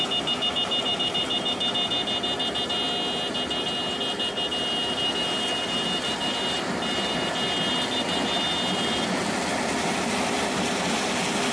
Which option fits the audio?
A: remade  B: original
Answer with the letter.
B